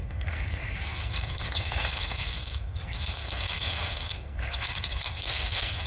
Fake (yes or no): yes